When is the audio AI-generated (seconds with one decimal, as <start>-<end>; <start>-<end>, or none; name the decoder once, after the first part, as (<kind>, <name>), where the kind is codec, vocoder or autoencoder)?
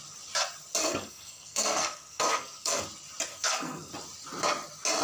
0.8-2.8 (codec, SNAC); 3.3-3.9